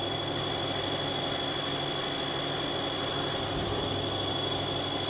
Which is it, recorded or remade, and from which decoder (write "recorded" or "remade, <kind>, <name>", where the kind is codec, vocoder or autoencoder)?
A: recorded